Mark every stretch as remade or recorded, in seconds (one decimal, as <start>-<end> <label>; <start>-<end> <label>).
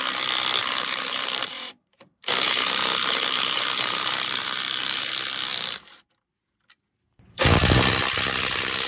0.0-0.6 recorded; 0.6-5.1 remade; 5.1-8.9 recorded